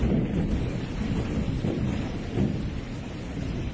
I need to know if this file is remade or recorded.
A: recorded